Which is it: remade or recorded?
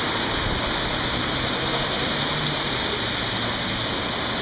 recorded